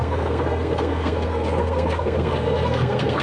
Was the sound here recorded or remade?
remade